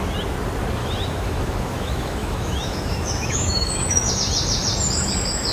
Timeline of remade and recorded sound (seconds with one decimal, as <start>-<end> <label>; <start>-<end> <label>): 0.0-0.8 recorded; 0.8-4.1 remade; 4.1-5.5 recorded